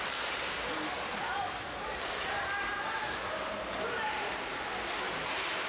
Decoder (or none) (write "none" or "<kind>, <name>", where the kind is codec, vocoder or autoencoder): none